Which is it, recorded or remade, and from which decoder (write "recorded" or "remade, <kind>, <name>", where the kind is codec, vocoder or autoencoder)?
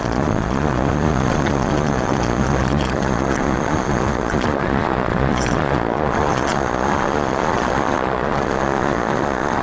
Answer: remade, vocoder, Vocos